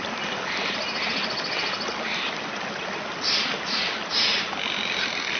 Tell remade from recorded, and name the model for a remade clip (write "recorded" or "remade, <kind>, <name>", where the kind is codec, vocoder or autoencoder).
recorded